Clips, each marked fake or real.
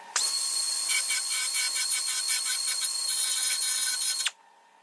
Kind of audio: fake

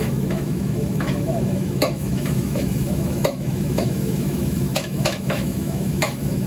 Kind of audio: fake